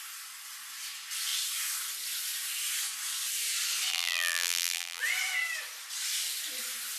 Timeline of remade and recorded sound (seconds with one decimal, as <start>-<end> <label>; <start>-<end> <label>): 0.0-3.9 recorded; 3.9-5.0 remade; 5.0-7.0 recorded